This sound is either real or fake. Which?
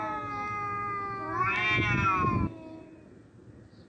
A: real